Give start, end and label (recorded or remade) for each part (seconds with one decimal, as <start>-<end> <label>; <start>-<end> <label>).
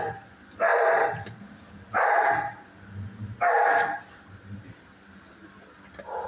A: 0.0-0.7 recorded; 0.7-4.3 remade; 4.3-6.3 recorded